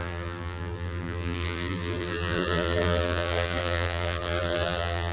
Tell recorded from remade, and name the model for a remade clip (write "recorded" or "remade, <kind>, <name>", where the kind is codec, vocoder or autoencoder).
remade, vocoder, BigVGAN v2